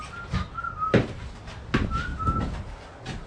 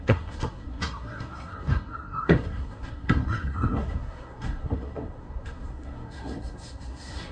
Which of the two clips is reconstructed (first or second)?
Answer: second